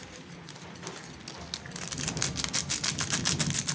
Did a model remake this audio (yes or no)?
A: no